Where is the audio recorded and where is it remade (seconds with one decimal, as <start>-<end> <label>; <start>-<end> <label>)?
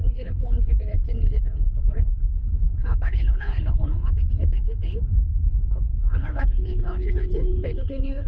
0.0-8.3 remade